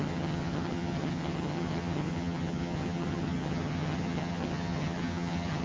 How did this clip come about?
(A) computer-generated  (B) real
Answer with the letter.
A